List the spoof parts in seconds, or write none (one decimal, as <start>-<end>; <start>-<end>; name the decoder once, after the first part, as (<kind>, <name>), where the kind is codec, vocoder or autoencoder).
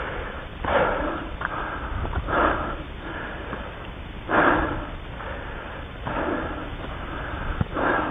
0.0-8.1 (vocoder, BigVGAN v2)